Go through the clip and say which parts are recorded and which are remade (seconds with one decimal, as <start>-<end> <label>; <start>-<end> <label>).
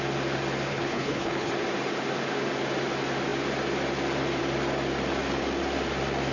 0.0-0.7 recorded; 0.7-1.5 remade; 1.5-6.3 recorded